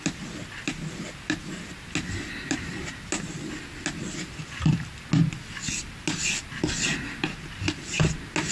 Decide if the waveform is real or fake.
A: real